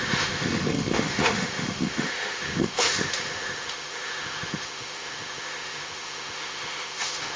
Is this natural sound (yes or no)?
no